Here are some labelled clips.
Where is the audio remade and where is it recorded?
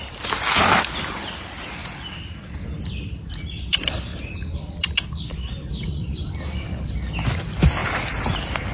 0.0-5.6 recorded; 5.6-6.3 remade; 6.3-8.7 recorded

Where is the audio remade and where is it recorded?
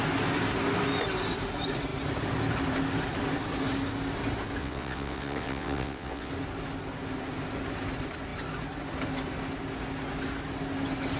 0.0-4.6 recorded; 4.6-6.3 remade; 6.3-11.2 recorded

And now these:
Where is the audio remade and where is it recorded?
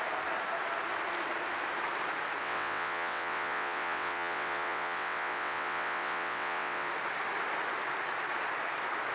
0.0-2.4 recorded; 2.4-6.9 remade; 6.9-9.1 recorded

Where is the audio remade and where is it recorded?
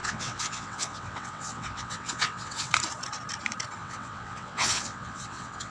0.0-2.7 remade; 2.7-3.8 recorded; 3.8-5.7 remade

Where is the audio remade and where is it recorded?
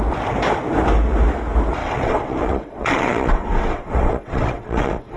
0.0-1.8 recorded; 1.8-5.2 remade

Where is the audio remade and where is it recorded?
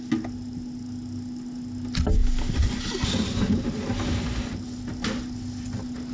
0.0-6.1 recorded